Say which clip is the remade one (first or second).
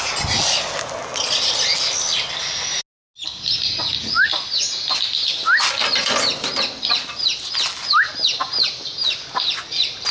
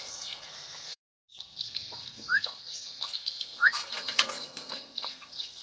second